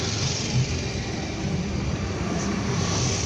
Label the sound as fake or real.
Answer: real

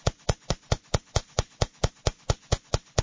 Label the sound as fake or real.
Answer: fake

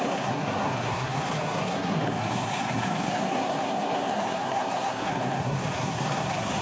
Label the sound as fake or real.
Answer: fake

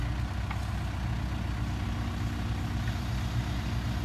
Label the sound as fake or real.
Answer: real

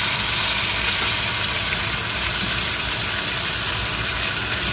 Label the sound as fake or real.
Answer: real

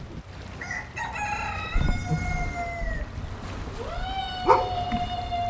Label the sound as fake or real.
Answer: real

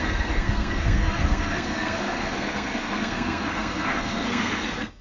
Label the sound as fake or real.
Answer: fake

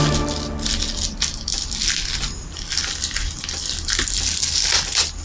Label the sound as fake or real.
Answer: real